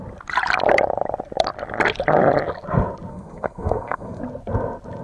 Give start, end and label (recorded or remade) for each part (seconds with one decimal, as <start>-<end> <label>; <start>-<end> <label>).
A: 0.0-3.1 recorded; 3.1-4.2 remade; 4.2-5.0 recorded